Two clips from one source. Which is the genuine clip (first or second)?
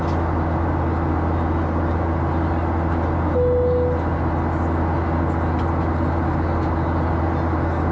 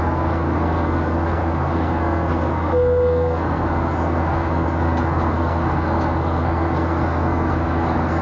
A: first